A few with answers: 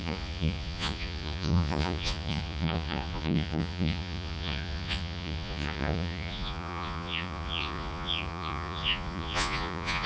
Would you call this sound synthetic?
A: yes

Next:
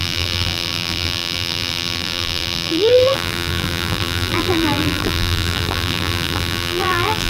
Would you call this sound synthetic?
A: yes